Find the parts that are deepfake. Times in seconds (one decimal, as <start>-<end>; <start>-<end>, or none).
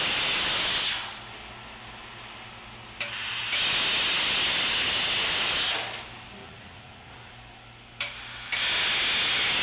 6.4-7.3